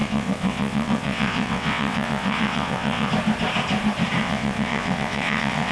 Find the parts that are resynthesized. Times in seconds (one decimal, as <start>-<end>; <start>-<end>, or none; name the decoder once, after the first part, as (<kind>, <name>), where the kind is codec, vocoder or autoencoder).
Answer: 0.0-3.1 (vocoder, WaveNeXt); 4.2-5.7